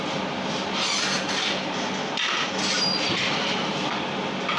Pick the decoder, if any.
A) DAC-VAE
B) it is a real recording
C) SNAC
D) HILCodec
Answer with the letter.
B